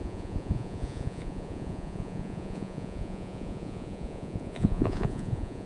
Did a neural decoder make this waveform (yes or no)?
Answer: yes